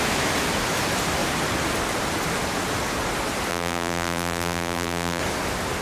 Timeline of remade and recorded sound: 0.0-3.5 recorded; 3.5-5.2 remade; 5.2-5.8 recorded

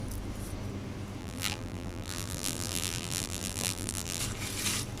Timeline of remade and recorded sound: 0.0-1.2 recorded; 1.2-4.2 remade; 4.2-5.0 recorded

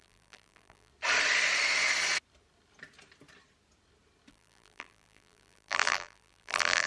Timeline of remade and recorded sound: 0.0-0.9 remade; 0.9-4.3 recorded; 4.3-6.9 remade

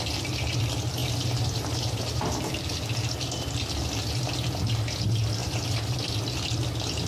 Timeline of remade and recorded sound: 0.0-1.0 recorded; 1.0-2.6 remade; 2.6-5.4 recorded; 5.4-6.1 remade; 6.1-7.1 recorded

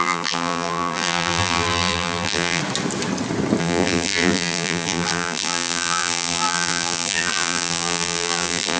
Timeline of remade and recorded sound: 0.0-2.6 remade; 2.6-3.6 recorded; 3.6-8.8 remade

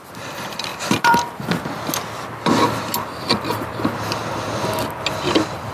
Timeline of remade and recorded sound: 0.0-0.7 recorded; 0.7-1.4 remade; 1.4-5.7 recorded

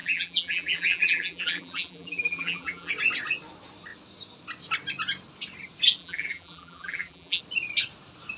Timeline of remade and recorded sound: 0.0-2.9 remade; 2.9-6.0 recorded; 6.0-7.4 remade; 7.4-8.4 recorded

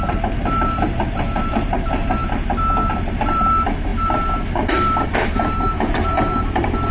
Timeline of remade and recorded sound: 0.0-2.2 remade; 2.2-2.9 recorded; 2.9-6.9 remade